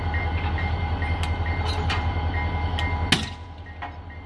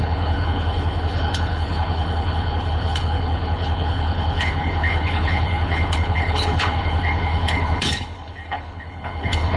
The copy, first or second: second